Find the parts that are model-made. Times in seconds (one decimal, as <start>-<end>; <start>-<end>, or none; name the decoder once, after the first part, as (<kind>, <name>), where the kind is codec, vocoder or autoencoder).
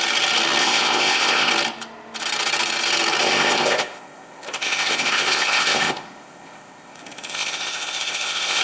0.6-1.5 (codec, ZipCodec); 3.2-8.6